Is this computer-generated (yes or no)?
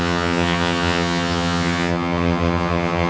yes